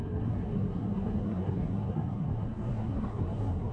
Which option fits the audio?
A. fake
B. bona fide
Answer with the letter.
A